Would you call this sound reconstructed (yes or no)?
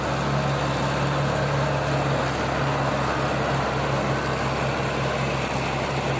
no